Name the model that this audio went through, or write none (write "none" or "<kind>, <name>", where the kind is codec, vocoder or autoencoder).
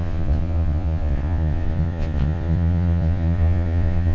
vocoder, Vocos